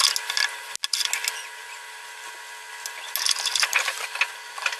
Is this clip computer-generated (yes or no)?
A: no